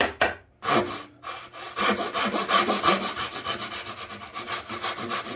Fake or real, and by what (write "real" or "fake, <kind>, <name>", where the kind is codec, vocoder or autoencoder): real